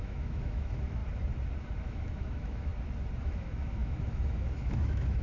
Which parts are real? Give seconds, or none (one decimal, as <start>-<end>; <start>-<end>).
1.0-1.8; 2.7-3.2